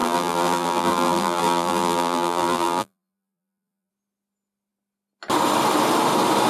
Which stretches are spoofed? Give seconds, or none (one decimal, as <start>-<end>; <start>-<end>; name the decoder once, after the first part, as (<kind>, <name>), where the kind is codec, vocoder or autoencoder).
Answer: 0.0-3.9 (vocoder, BigVGAN v2)